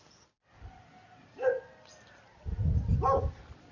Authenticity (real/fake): real